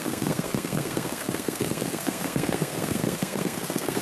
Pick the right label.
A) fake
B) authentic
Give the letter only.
A